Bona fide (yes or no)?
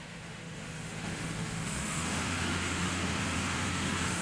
no